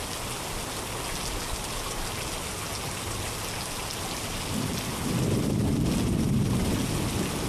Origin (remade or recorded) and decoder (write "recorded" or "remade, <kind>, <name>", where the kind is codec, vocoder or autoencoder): recorded